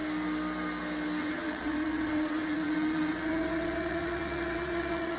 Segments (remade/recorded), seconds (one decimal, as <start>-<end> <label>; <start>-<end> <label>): 0.0-1.2 recorded; 1.2-5.2 remade

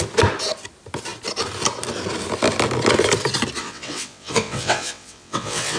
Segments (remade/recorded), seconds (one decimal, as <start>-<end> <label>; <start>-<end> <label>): 0.0-3.6 recorded; 3.6-5.8 remade

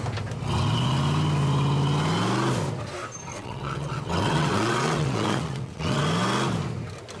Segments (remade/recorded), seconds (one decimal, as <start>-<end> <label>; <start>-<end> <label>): 0.0-3.3 recorded; 3.3-6.0 remade; 6.0-7.2 recorded

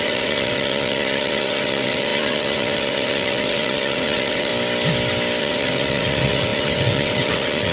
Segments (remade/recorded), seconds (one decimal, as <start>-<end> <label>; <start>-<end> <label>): 0.0-4.5 remade; 4.5-5.4 recorded; 5.4-7.7 remade

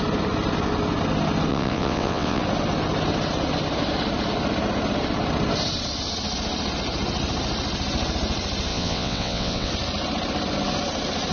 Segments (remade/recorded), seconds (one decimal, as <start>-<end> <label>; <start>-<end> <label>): 0.0-1.5 recorded; 1.5-2.4 remade; 2.4-8.7 recorded; 8.7-9.7 remade; 9.7-11.3 recorded